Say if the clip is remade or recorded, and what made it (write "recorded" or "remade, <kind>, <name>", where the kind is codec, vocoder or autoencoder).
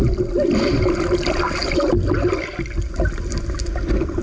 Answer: recorded